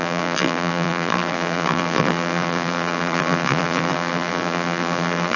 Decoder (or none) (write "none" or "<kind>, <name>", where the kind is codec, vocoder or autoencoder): vocoder, BigVGAN v2